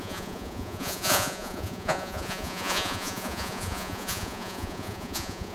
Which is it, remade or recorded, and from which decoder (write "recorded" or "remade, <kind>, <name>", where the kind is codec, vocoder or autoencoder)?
remade, vocoder, Vocos